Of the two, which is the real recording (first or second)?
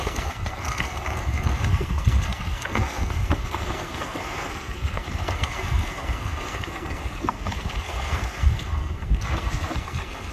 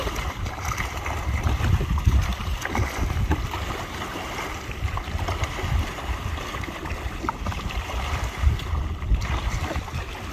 second